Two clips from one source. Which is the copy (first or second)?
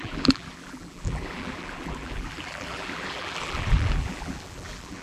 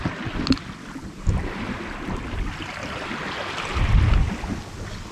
first